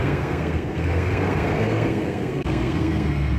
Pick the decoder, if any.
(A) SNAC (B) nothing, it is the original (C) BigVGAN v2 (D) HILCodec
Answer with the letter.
A